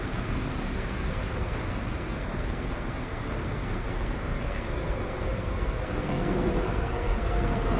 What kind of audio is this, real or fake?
fake